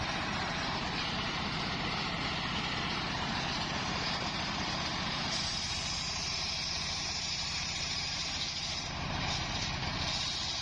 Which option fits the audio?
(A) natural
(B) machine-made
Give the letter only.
B